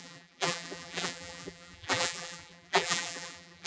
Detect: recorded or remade remade